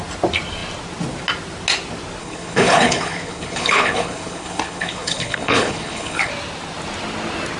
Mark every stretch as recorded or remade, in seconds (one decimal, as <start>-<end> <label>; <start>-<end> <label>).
0.0-2.2 recorded; 2.2-6.3 remade; 6.3-7.6 recorded